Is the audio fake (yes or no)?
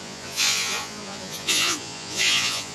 yes